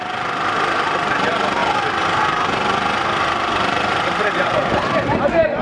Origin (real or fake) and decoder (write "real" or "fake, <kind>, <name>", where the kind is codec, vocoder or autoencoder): fake, vocoder, BigVGAN v2